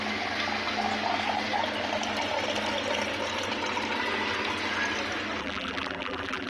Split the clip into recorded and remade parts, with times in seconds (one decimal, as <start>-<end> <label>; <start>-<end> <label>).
0.0-5.4 recorded; 5.4-6.5 remade